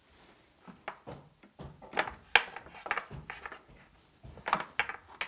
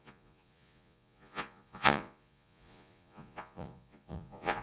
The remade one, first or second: second